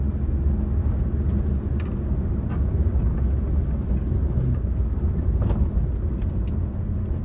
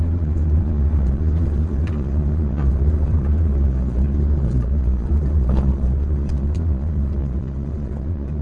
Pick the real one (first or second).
first